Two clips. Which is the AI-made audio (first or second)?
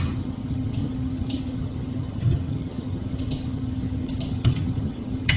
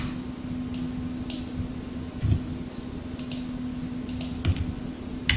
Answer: first